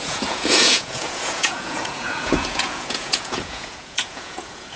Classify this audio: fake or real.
fake